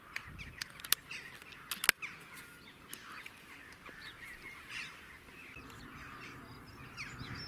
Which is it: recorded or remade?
recorded